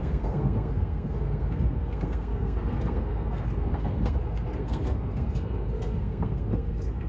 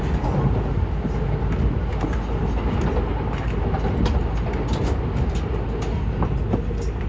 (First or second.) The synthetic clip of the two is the first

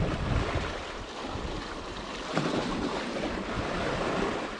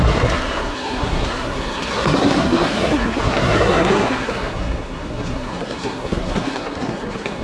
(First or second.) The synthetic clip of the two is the second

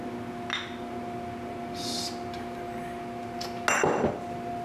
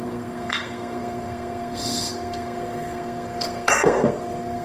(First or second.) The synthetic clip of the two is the second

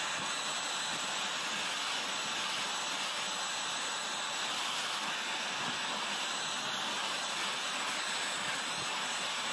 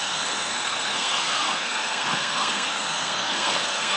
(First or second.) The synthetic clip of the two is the second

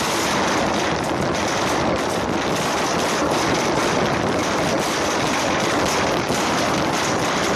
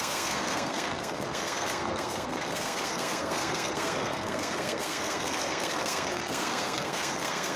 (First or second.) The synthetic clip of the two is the second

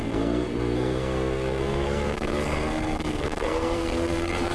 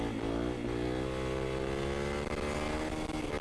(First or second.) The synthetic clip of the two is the first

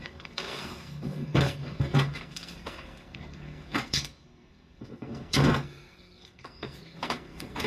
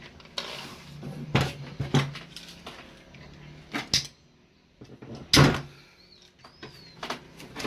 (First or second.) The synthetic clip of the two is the first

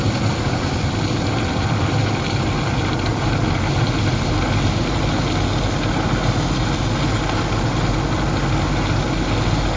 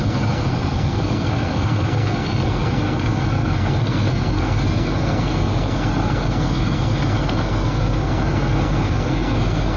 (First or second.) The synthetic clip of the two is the second